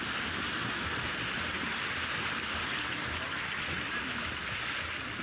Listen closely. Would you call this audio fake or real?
real